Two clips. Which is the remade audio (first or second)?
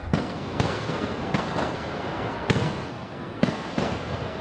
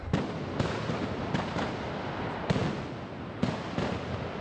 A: first